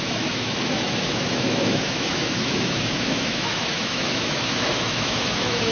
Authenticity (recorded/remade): remade